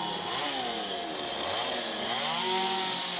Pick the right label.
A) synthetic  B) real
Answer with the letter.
B